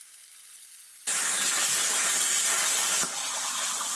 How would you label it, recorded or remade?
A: recorded